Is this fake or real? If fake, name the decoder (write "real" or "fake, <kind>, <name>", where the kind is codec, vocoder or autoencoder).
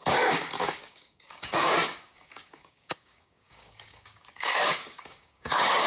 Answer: fake, codec, DAC